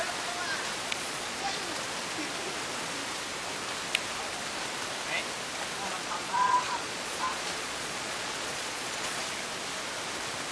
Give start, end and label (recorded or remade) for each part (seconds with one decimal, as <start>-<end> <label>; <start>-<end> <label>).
0.0-0.7 recorded; 0.7-1.7 remade; 1.7-5.9 recorded; 5.9-9.2 remade; 9.2-10.5 recorded